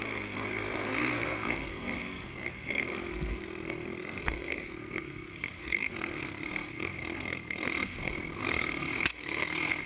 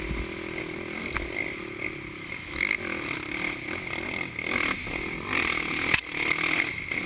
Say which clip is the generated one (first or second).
first